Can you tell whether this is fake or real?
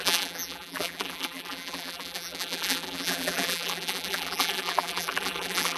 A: fake